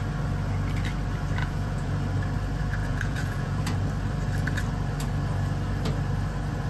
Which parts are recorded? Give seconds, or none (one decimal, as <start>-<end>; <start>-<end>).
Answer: 0.0-1.4; 1.9-2.8; 3.6-6.7